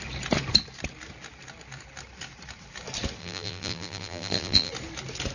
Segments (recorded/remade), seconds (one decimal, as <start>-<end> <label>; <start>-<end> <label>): 0.0-3.2 recorded; 3.2-4.7 remade; 4.7-5.3 recorded